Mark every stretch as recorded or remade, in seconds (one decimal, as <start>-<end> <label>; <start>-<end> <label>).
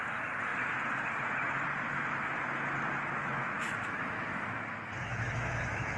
0.0-3.2 recorded; 3.2-6.0 remade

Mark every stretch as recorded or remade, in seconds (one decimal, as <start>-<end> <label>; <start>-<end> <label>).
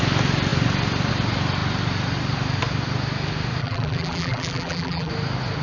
0.0-3.6 recorded; 3.6-5.1 remade; 5.1-5.6 recorded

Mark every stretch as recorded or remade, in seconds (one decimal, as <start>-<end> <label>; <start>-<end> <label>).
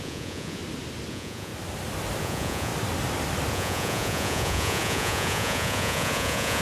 0.0-0.6 remade; 0.6-1.1 recorded; 1.1-1.5 remade; 1.5-2.2 recorded; 2.2-2.7 remade; 2.7-3.5 recorded; 3.5-6.6 remade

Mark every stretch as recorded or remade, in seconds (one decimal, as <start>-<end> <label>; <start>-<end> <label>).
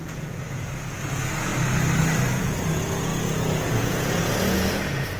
0.0-1.5 remade; 1.5-2.4 recorded; 2.4-5.2 remade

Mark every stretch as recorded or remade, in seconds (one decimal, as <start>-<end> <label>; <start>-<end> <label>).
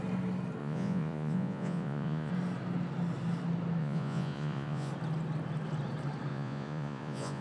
0.0-0.6 recorded; 0.6-2.3 remade; 2.3-3.8 recorded; 3.8-4.9 remade; 4.9-6.3 recorded; 6.3-7.4 remade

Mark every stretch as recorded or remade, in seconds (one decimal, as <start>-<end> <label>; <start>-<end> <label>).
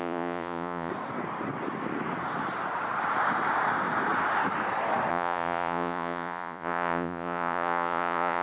0.0-0.9 remade; 0.9-5.1 recorded; 5.1-8.4 remade